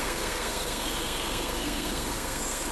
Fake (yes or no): yes